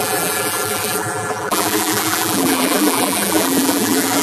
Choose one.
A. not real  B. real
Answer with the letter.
A